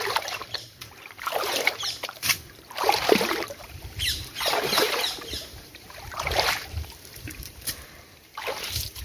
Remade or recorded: remade